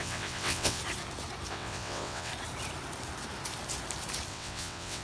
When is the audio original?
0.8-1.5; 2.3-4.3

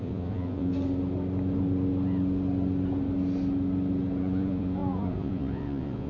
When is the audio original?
0.7-4.2

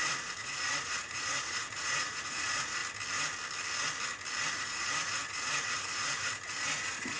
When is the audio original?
2.8-4.5

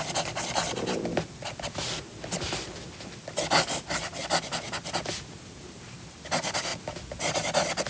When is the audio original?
0.0-7.9

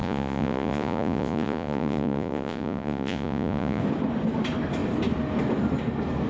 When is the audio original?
3.8-6.3

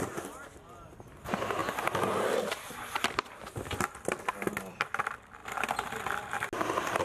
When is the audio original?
0.0-7.0